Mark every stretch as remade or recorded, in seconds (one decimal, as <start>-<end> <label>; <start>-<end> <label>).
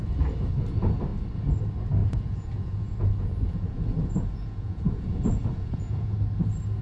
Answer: 0.0-2.0 recorded; 2.0-6.1 remade; 6.1-6.8 recorded